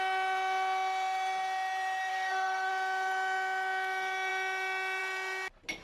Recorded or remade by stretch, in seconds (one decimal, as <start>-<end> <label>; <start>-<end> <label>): 0.0-2.1 recorded; 2.1-2.7 remade; 2.7-5.8 recorded